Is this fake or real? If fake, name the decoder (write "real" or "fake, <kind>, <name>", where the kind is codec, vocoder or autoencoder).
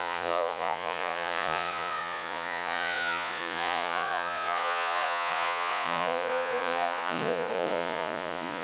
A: fake, vocoder, Vocos